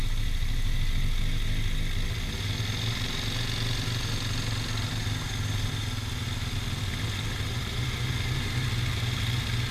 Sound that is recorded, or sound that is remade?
recorded